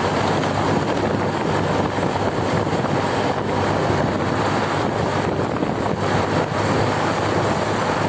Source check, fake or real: real